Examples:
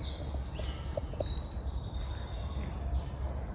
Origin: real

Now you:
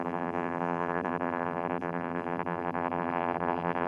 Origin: fake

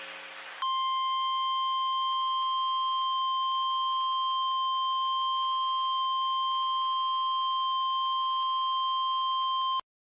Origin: real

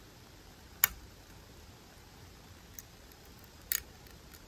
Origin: real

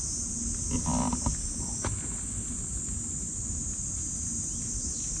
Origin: real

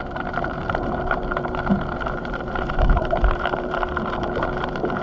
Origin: fake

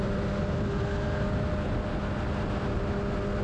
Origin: real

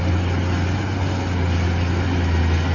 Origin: real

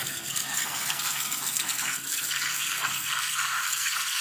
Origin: fake